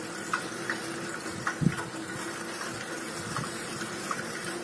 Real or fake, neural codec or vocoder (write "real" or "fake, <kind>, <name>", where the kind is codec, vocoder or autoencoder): real